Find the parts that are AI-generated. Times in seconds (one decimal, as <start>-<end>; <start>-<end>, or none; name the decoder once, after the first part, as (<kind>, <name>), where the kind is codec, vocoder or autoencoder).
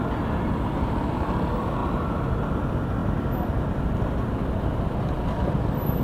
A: 1.8-2.4 (vocoder, BigVGAN v2); 3.0-3.6